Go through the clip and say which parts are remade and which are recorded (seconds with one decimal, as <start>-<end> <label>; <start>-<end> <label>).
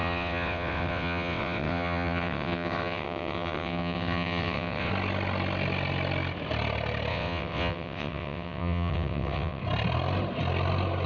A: 0.0-4.9 remade; 4.9-7.1 recorded; 7.1-9.6 remade; 9.6-11.1 recorded